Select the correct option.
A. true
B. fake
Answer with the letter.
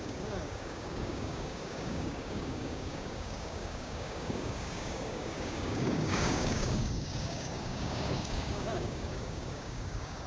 B